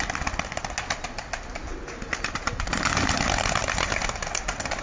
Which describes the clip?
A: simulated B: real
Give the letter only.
B